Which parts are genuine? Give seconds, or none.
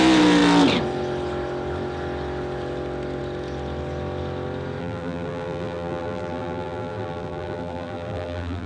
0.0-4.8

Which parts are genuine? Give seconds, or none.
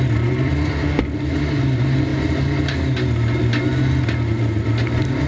0.0-5.3